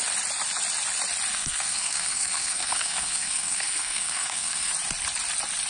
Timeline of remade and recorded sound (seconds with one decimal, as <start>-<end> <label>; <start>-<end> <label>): 0.0-1.3 recorded; 1.3-4.7 remade; 4.7-5.7 recorded